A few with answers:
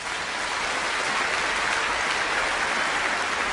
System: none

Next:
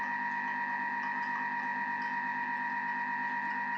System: none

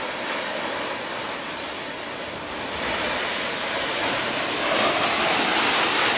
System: none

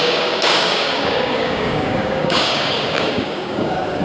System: codec, DAC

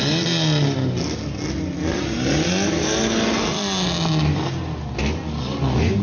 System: none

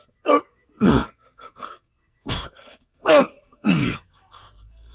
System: codec, SNAC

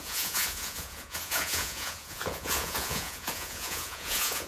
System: vocoder, Vocos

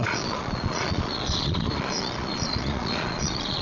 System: vocoder, Vocos